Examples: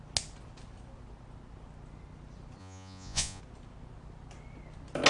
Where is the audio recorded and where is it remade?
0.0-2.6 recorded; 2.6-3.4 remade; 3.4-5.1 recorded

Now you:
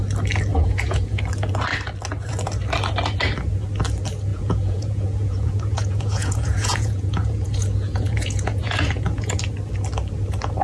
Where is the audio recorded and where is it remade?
0.0-0.5 recorded; 0.5-1.2 remade; 1.2-4.3 recorded; 4.3-9.4 remade; 9.4-10.6 recorded

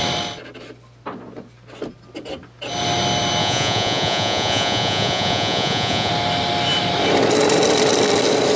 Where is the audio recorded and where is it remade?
0.0-3.4 recorded; 3.4-6.1 remade; 6.1-8.6 recorded